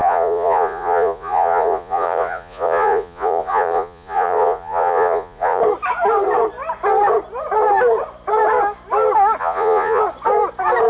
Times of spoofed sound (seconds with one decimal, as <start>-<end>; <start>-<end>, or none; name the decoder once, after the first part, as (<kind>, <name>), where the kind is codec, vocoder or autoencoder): 0.0-5.6 (vocoder, Vocos); 9.4-10.0